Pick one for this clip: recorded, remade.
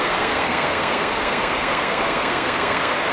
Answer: remade